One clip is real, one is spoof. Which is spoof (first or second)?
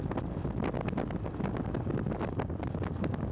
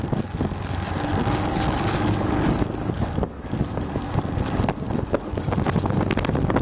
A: second